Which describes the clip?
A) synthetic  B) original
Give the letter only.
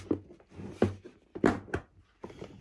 B